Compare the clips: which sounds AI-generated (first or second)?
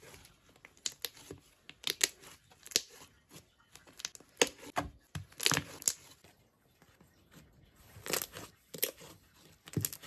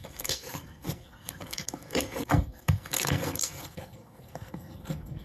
second